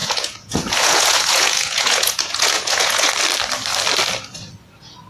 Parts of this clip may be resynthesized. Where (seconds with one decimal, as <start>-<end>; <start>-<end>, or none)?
0.0-3.1